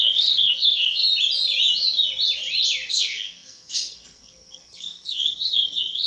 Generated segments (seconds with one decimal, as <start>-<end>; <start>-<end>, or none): 0.0-1.0; 2.9-6.1